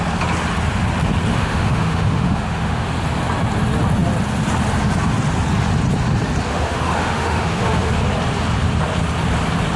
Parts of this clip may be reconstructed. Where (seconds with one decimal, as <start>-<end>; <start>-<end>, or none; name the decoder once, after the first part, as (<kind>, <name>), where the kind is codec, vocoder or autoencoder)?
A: 1.3-2.9 (autoencoder, DAC-VAE); 6.5-7.9